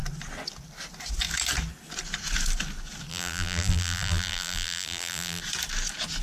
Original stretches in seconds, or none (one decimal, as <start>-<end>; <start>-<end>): 0.0-3.1; 5.4-6.2